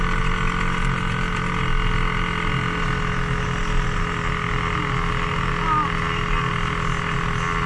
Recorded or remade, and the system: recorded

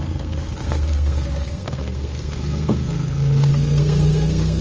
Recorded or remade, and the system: remade, codec, SNAC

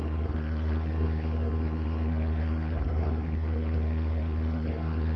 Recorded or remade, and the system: remade, codec, SNAC